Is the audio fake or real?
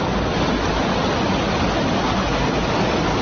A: real